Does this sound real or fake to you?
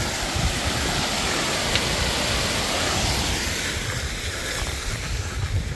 real